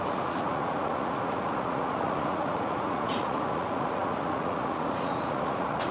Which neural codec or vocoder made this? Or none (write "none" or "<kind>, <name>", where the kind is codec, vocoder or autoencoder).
vocoder, Vocos